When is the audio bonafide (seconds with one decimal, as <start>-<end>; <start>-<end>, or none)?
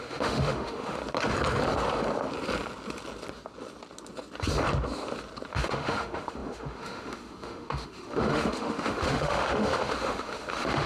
1.0-5.5